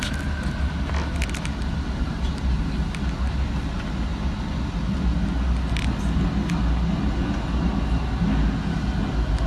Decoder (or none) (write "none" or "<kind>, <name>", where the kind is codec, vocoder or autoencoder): none